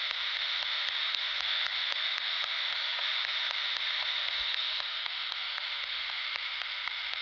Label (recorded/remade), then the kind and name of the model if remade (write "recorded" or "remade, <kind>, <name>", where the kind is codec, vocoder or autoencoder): remade, autoencoder, DAC-VAE